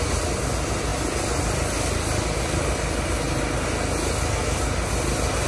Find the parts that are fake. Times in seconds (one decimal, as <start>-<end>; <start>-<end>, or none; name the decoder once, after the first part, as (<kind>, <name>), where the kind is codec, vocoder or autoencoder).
none

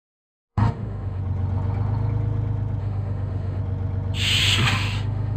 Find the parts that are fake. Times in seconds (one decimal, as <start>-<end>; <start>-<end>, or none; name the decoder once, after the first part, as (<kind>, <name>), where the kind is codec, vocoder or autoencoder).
0.5-1.2 (autoencoder, DAC-VAE); 2.8-3.6; 4.4-5.4